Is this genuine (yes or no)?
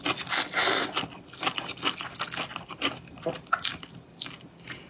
yes